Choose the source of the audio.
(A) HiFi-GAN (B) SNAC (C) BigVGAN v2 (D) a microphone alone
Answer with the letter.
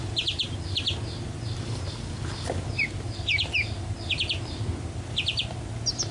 D